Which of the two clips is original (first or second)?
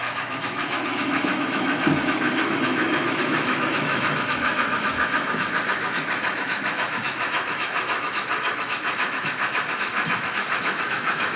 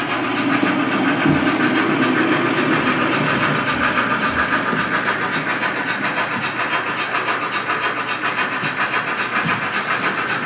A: second